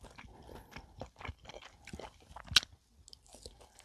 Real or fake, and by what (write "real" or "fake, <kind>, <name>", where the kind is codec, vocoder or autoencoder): real